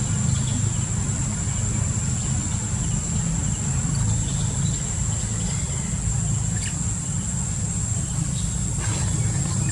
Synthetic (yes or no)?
no